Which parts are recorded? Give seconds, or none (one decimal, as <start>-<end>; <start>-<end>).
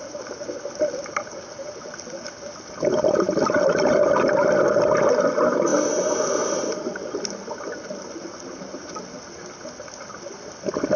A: 0.0-11.0